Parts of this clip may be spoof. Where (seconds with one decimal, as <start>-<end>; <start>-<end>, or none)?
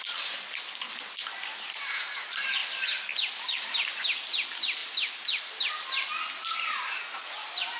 none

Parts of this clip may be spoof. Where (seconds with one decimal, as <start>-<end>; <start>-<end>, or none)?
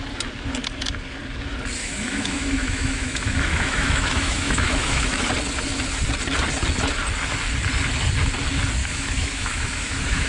1.8-5.3; 8.8-10.3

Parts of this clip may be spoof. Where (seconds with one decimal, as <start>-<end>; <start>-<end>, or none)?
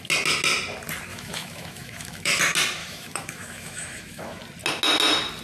1.1-2.4; 2.8-4.4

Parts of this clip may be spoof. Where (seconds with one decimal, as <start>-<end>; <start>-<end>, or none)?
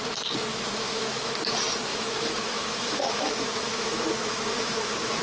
0.5-1.3; 1.9-5.2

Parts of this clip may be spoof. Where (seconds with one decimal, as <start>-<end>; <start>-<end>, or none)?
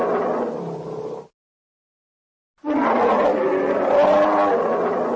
none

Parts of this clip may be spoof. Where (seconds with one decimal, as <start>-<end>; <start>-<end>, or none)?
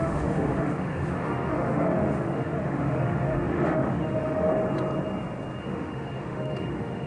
0.0-4.5; 5.6-7.1